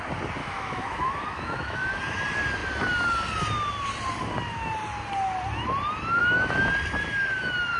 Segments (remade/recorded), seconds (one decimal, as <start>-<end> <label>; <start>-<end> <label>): 0.0-0.4 recorded; 0.4-2.0 remade; 2.0-6.2 recorded; 6.2-6.7 remade; 6.7-7.8 recorded